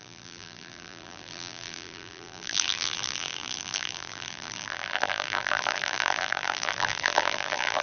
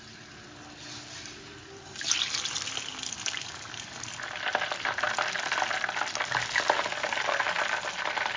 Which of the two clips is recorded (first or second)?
second